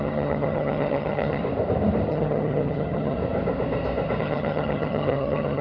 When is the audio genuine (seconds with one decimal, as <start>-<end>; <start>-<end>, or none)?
1.4-2.1; 3.2-4.2